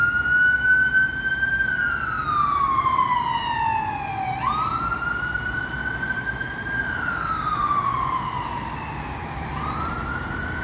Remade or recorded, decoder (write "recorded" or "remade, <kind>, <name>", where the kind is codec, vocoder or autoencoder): recorded